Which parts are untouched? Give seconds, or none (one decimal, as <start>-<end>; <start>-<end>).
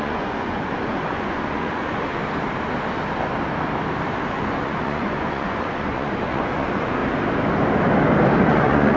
2.2-4.3; 7.0-8.4